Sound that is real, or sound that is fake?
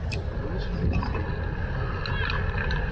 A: real